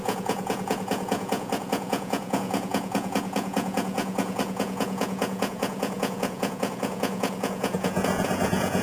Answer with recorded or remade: remade